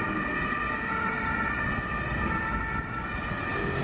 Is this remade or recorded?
recorded